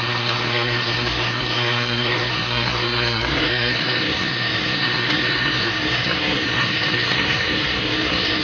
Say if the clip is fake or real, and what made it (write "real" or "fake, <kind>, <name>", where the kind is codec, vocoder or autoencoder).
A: fake, codec, SNAC